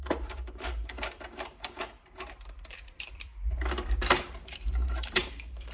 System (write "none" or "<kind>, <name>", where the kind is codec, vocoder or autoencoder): vocoder, BigVGAN v2